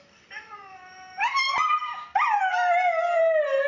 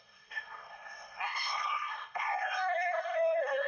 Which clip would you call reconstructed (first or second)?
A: second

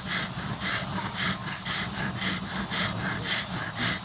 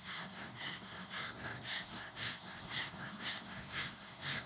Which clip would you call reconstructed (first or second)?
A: second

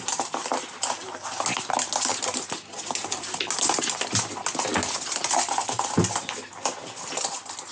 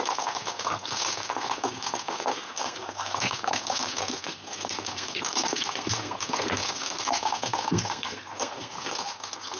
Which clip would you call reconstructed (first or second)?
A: second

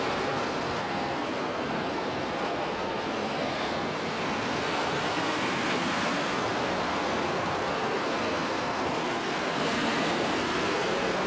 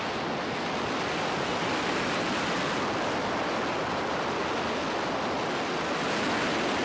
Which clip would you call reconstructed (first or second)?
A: first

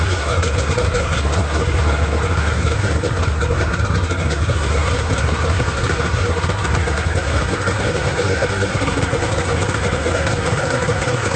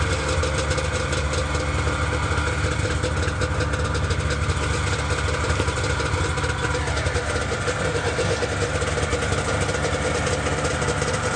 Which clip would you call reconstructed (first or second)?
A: first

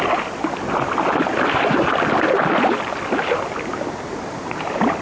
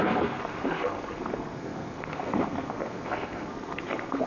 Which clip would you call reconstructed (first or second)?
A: second